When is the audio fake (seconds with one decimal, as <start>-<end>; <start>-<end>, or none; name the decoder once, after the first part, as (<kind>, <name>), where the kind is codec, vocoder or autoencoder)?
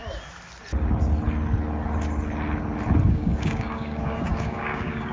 3.1-5.1 (codec, DAC)